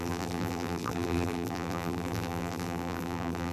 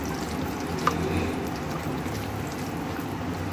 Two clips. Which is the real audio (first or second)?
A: second